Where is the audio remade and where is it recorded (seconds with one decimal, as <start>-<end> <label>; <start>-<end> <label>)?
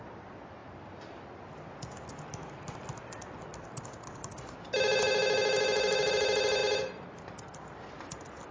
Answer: 0.0-8.5 recorded